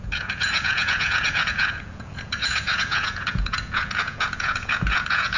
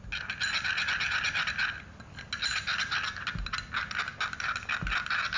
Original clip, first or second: second